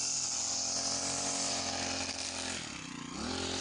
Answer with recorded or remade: recorded